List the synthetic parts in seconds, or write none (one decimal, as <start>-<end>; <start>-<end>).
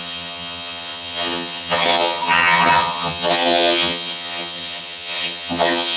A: 0.0-6.0